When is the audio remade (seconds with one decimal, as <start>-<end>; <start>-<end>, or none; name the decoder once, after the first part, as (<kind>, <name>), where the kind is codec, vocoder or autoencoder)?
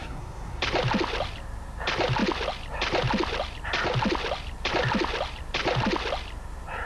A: 0.0-0.6 (codec, SNAC)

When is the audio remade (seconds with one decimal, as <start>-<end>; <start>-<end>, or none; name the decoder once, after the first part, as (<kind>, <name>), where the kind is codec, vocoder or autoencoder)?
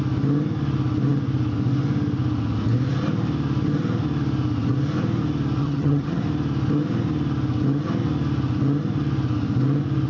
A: 5.6-6.2 (vocoder, HiFi-GAN)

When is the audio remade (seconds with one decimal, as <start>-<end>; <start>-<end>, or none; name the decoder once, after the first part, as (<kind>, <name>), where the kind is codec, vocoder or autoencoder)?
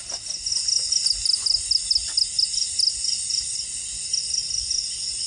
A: none